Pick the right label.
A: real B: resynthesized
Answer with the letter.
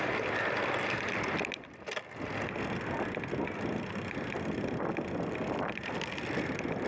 A